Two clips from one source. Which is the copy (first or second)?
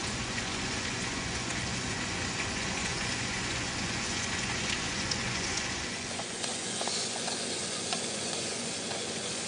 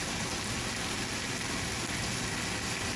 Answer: first